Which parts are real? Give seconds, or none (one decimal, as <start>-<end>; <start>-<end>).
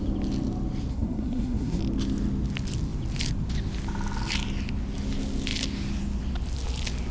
0.0-0.9; 1.8-7.1